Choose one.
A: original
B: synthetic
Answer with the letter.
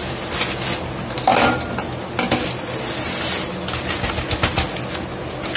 A